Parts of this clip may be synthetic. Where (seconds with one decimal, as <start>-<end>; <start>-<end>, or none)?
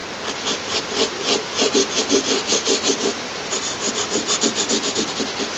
none